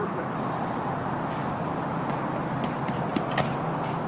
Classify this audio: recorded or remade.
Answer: recorded